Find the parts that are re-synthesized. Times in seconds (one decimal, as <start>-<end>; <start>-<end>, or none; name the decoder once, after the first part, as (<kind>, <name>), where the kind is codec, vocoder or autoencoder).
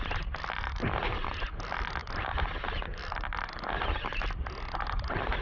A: none